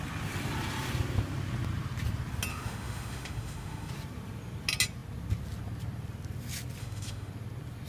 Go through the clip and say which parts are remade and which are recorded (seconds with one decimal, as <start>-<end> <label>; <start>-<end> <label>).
0.0-2.5 recorded; 2.5-3.9 remade; 3.9-6.8 recorded; 6.8-7.3 remade; 7.3-7.9 recorded

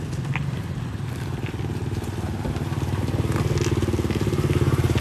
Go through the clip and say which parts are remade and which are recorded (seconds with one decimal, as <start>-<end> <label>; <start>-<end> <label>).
0.0-5.0 recorded

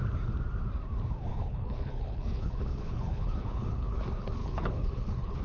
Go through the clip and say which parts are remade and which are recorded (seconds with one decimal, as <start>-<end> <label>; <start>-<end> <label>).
0.0-1.3 recorded; 1.3-4.0 remade; 4.0-4.4 recorded; 4.4-5.4 remade

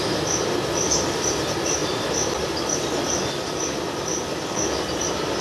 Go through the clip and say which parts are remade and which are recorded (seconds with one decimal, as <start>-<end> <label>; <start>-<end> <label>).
0.0-5.4 recorded